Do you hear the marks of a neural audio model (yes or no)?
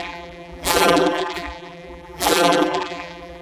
yes